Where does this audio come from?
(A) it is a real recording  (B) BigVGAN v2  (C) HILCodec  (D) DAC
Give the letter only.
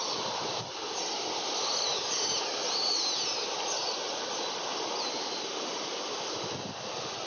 A